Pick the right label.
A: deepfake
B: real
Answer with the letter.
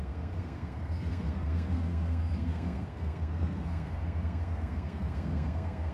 A